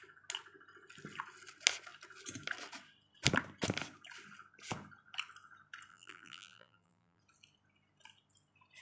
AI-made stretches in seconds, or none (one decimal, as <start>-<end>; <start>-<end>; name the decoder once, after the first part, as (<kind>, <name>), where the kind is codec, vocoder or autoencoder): 5.9-7.2 (vocoder, BigVGAN v2)